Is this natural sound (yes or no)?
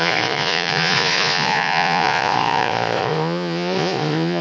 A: no